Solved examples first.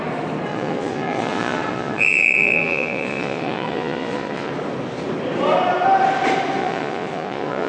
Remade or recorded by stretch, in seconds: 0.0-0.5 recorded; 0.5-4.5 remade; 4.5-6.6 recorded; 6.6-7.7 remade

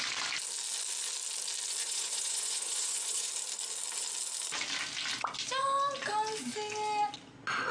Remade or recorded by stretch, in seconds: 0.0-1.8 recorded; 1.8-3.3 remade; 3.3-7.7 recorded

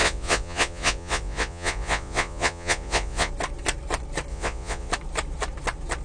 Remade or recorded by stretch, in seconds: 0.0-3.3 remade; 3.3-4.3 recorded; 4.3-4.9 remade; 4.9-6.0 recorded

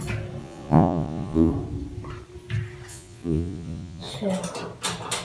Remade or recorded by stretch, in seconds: 0.0-0.4 recorded; 0.4-1.5 remade; 1.5-2.9 recorded; 2.9-4.1 remade; 4.1-5.2 recorded

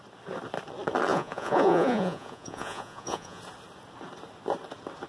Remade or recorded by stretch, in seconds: 0.0-1.1 recorded; 1.1-3.4 remade; 3.4-5.1 recorded